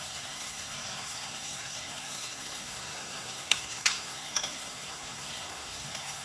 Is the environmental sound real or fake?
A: fake